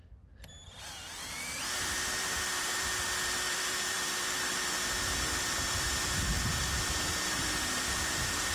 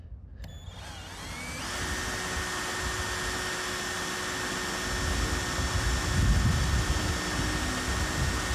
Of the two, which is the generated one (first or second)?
first